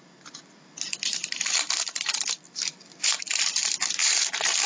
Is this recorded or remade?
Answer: recorded